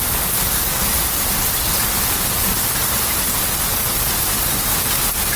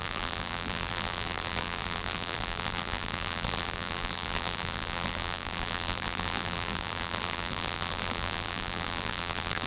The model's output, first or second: second